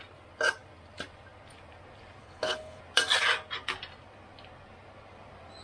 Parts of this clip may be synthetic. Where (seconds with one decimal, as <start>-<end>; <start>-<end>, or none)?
2.2-2.8